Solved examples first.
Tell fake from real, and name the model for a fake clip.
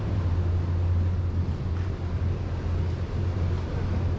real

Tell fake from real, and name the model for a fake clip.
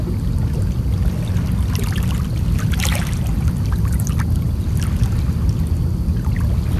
real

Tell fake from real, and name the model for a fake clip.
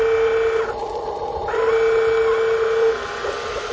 real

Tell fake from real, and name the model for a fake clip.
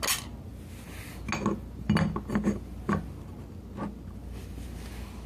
real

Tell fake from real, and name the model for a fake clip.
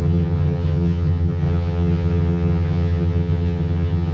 fake, vocoder, HiFi-GAN